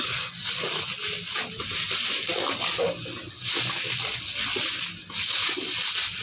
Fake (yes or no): no